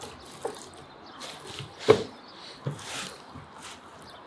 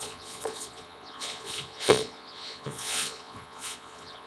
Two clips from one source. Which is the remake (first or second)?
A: second